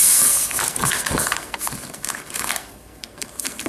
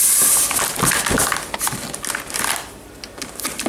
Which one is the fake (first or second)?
first